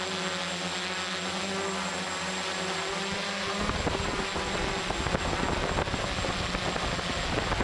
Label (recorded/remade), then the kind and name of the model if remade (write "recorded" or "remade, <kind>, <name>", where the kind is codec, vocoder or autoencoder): recorded